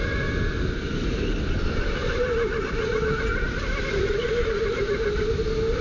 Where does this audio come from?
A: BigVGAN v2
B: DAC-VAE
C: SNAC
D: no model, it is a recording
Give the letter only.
D